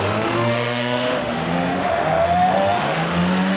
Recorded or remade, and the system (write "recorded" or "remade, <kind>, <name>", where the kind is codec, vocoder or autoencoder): remade, autoencoder, DAC-VAE